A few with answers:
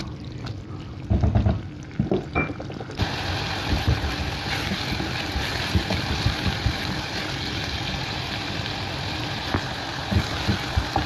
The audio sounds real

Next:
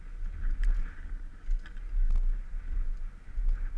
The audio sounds real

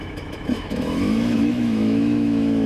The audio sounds fake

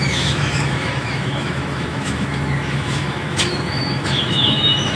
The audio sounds fake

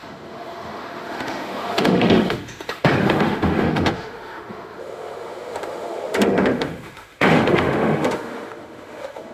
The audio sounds fake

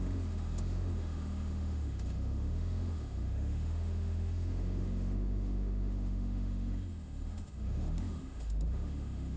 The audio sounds fake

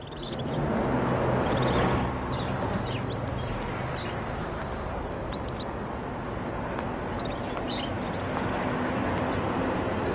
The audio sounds real